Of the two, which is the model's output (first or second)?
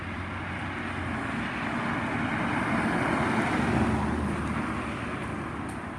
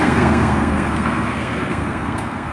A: second